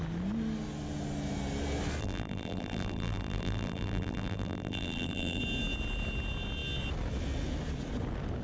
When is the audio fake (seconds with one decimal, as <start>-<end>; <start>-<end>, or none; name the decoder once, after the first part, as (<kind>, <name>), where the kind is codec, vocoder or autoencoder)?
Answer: 2.0-5.4 (vocoder, BigVGAN v2)